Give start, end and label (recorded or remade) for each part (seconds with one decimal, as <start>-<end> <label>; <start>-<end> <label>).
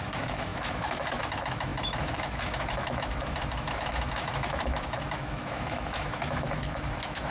0.0-7.3 remade